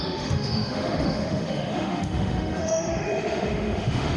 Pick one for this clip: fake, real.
fake